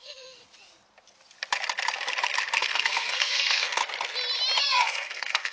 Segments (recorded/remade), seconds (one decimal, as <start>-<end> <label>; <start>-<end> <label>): 0.0-0.4 remade; 0.4-2.6 recorded; 2.6-3.8 remade; 3.8-4.6 recorded; 4.6-5.5 remade

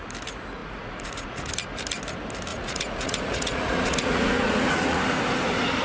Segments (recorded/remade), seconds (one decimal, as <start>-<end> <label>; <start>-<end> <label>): 0.0-0.6 recorded; 0.6-1.5 remade; 1.5-2.5 recorded; 2.5-5.2 remade; 5.2-5.8 recorded

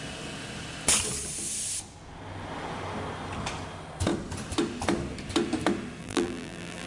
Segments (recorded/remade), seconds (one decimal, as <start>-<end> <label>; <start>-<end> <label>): 0.0-6.0 recorded; 6.0-6.9 remade

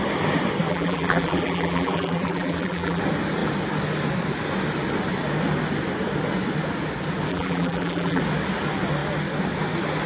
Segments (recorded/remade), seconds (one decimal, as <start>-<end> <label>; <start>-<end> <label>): 0.0-0.7 recorded; 0.7-3.0 remade; 3.0-7.3 recorded; 7.3-8.2 remade; 8.2-10.1 recorded

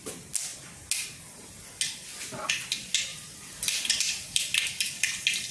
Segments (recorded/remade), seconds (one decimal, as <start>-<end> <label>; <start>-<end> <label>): 0.0-3.1 recorded; 3.1-4.4 remade; 4.4-5.5 recorded

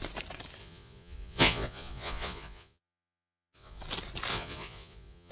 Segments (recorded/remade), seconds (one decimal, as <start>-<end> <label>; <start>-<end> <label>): 0.0-0.6 recorded; 0.6-3.8 remade; 3.8-4.3 recorded; 4.3-5.3 remade

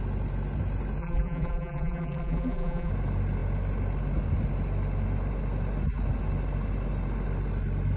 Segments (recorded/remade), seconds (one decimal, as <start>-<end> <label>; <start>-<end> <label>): 0.0-1.0 recorded; 1.0-2.9 remade; 2.9-8.0 recorded